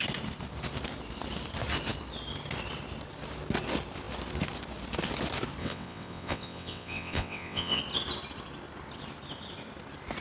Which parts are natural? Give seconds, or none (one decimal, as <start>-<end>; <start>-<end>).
0.0-5.6; 7.8-10.2